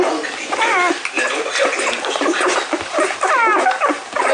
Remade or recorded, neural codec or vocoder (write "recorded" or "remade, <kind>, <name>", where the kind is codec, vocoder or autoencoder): recorded